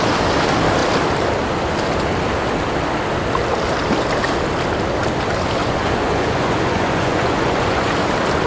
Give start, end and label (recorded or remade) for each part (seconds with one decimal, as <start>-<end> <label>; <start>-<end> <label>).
0.0-5.6 recorded; 5.6-7.9 remade; 7.9-8.5 recorded